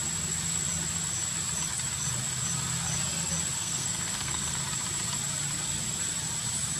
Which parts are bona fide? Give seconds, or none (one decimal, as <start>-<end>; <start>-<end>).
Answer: 0.0-3.6; 4.6-6.8